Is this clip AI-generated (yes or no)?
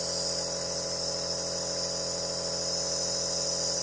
no